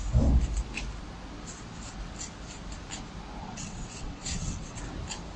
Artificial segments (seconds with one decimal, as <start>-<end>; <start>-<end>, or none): 3.4-4.8